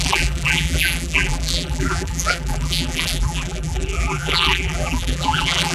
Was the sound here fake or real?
fake